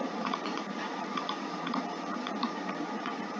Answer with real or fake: fake